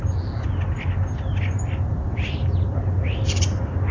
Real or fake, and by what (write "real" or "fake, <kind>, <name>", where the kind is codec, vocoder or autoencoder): real